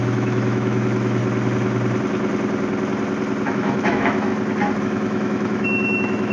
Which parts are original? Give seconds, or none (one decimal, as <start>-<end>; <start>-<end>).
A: 1.2-3.5; 4.3-4.8